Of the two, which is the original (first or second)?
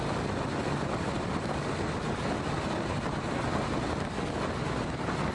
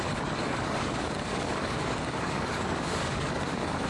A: first